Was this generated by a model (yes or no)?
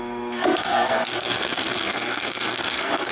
yes